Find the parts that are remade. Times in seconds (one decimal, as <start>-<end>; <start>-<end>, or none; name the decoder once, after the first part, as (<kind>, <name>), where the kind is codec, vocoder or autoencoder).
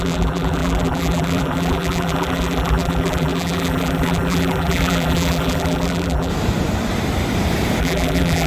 0.0-6.3 (vocoder, BigVGAN v2); 7.8-8.5